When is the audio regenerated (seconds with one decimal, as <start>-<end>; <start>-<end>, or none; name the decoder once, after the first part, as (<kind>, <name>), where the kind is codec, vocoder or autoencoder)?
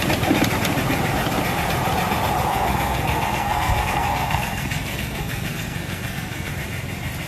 2.5-6.5 (codec, SNAC)